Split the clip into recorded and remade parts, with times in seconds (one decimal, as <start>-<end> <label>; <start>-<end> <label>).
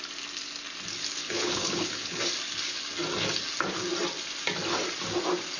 0.0-1.2 recorded; 1.2-2.2 remade; 2.2-5.6 recorded